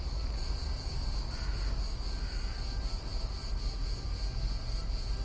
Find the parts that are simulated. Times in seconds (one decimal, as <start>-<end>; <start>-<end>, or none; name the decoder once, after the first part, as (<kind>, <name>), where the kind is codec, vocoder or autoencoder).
none